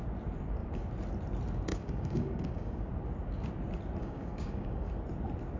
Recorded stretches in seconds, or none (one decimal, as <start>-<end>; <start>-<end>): 0.0-1.7; 2.9-4.0; 4.9-5.6